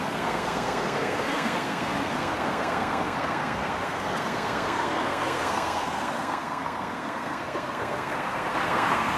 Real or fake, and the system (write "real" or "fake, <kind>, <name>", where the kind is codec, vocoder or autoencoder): fake, codec, SNAC